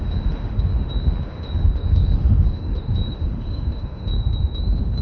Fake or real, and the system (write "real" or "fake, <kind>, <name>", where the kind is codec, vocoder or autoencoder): fake, autoencoder, DAC-VAE